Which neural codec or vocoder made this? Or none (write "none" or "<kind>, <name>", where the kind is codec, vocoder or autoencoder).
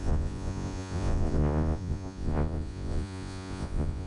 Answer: vocoder, Vocos